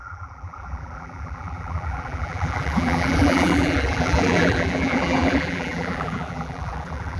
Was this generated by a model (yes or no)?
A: yes